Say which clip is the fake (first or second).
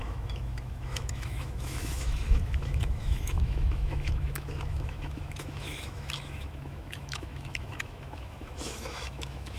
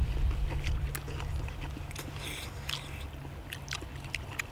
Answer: first